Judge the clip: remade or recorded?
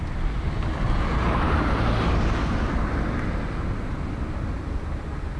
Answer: recorded